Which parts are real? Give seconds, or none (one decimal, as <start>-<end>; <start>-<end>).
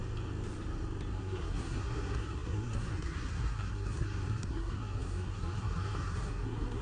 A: 0.0-1.1